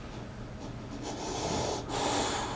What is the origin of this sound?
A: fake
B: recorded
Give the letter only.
B